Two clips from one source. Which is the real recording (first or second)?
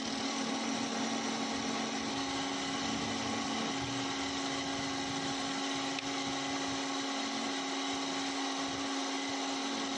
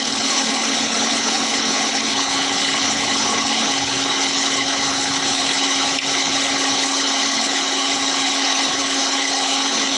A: first